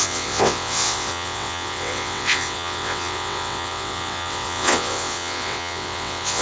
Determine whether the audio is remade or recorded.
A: remade